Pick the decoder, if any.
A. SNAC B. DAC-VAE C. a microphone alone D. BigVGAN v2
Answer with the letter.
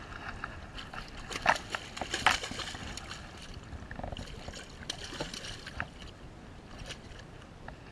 C